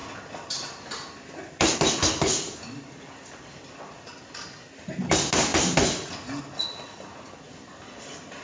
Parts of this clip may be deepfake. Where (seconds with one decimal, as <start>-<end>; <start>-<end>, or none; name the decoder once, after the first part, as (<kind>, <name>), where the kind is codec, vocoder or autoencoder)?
none